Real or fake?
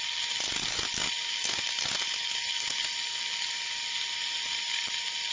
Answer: real